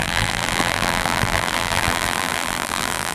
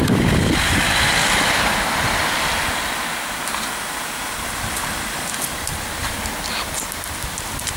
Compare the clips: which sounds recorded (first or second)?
second